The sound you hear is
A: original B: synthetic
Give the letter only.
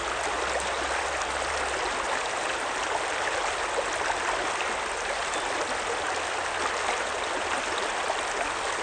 A